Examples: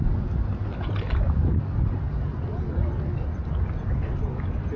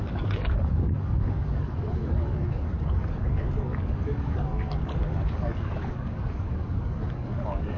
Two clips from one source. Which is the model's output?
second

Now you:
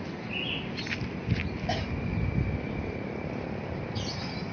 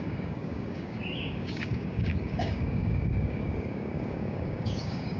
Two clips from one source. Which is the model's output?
second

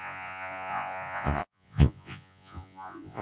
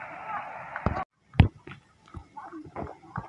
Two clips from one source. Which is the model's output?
first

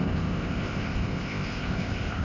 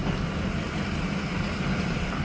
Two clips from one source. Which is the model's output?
first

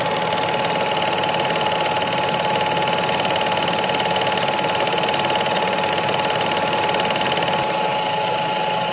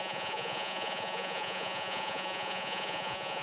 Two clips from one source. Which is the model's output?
second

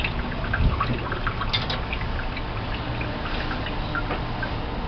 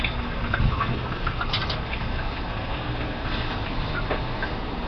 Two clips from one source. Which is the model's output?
second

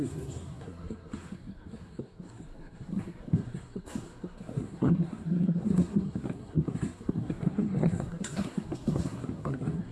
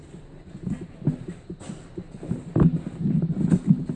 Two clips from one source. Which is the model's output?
first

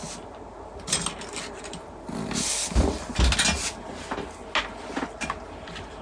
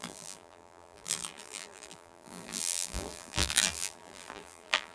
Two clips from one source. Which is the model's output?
second